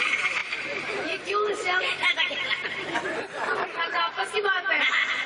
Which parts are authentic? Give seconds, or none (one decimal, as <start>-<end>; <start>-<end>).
0.0-0.4; 1.8-2.6; 4.3-5.3